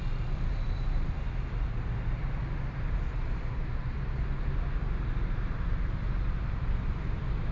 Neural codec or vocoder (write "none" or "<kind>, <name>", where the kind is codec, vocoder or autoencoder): none